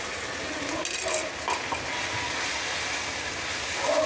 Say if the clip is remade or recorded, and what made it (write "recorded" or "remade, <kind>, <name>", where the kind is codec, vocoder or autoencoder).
recorded